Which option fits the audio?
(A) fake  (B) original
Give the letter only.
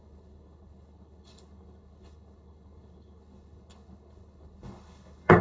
A